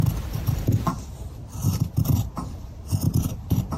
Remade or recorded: recorded